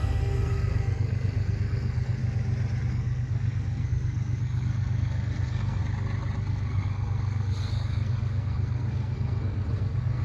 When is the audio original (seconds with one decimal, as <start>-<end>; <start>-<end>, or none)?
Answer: 2.2-2.9; 5.8-6.5